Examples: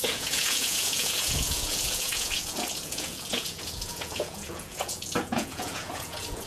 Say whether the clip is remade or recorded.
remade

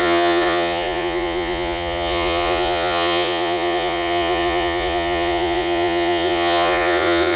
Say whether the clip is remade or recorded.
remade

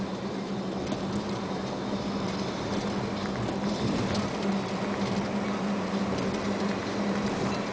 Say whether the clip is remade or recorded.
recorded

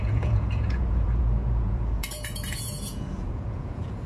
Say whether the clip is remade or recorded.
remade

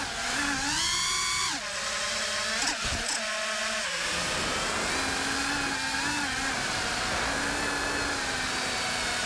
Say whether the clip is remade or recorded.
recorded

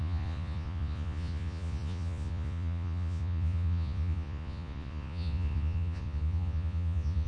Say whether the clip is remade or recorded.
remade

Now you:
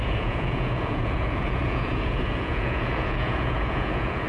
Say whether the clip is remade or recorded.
remade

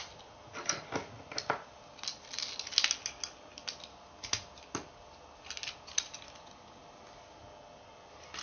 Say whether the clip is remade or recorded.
recorded